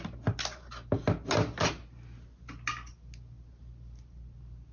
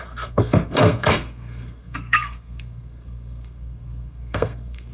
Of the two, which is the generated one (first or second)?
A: second